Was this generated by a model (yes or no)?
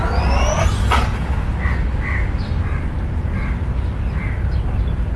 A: no